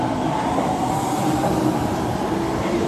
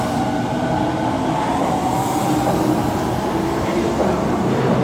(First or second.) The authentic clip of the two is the second